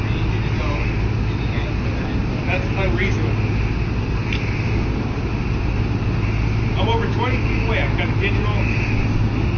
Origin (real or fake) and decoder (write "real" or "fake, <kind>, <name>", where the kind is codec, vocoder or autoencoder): real